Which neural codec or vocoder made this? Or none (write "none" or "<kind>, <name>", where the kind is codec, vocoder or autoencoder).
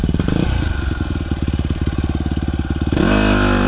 none